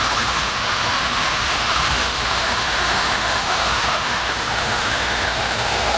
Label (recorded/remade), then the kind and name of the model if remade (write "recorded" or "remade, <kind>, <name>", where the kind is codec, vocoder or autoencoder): remade, autoencoder, DAC-VAE